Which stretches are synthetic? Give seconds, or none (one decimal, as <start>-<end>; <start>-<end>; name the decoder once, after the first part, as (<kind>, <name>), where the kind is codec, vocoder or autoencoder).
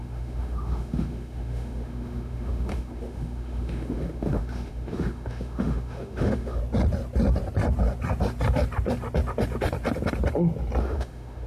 0.0-6.6 (autoencoder, DAC-VAE); 10.8-11.5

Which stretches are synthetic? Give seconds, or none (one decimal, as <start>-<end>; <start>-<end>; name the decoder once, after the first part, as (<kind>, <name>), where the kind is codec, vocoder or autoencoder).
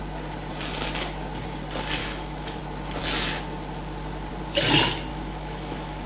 2.0-2.6 (autoencoder, DAC-VAE); 5.1-6.1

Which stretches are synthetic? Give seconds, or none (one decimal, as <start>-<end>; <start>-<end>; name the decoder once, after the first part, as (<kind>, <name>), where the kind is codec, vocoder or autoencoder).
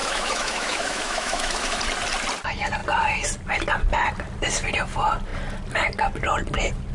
0.0-1.8 (autoencoder, DAC-VAE)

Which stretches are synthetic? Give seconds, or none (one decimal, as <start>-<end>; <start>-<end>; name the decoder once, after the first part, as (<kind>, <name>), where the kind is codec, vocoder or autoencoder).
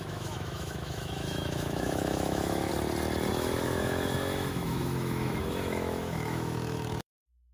0.0-2.7 (autoencoder, DAC-VAE); 3.3-7.5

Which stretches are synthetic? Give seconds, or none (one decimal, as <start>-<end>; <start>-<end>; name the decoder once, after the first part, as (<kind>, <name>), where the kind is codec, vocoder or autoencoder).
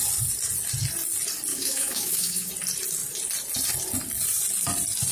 1.5-2.5 (autoencoder, DAC-VAE)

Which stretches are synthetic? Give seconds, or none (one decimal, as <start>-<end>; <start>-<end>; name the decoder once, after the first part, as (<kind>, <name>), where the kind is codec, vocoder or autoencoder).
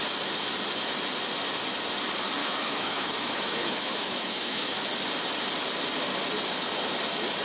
2.4-4.8 (autoencoder, DAC-VAE)